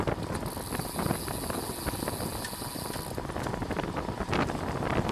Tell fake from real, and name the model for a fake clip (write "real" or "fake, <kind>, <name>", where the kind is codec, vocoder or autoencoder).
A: real